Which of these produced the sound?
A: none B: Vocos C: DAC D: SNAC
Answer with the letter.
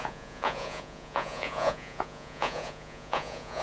B